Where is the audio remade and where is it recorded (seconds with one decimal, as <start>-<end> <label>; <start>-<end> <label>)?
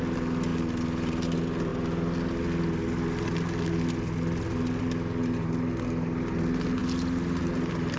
0.0-8.0 recorded